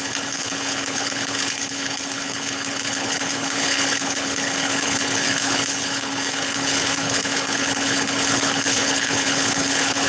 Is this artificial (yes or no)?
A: yes